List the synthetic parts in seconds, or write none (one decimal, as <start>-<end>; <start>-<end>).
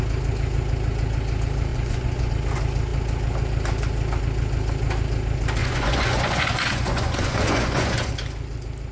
1.7-2.3; 5.6-8.1